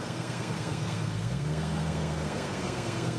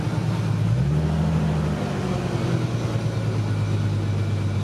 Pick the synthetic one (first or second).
first